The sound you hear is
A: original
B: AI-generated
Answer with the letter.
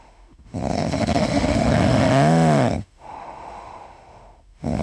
B